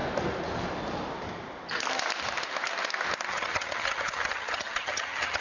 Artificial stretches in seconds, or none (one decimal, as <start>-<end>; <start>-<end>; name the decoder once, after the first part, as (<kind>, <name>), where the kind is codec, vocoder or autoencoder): 3.3-5.4 (vocoder, HiFi-GAN)